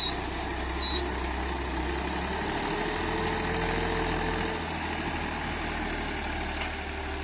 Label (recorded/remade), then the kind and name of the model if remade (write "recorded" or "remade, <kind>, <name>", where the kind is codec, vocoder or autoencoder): recorded